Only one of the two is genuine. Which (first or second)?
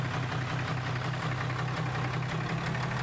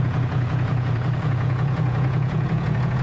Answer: first